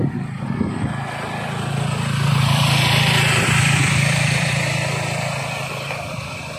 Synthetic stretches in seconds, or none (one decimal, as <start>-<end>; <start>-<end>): 2.3-4.5; 5.4-6.1